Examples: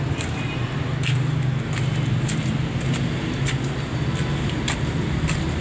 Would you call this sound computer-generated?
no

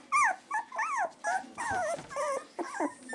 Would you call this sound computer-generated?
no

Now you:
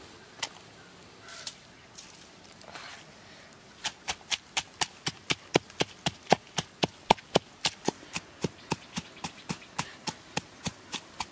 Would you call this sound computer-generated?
no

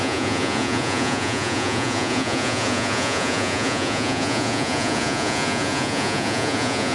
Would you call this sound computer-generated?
yes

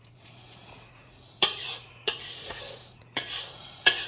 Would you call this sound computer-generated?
yes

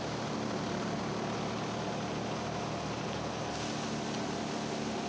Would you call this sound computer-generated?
no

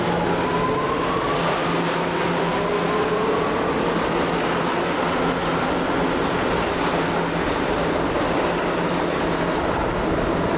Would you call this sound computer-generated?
no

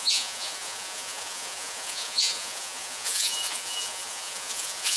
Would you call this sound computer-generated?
yes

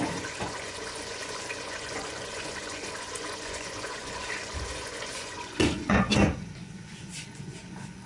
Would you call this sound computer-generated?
yes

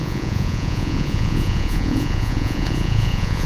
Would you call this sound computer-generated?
yes